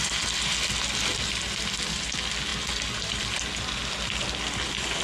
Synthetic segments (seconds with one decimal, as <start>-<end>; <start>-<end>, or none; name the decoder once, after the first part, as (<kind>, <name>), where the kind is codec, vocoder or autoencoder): none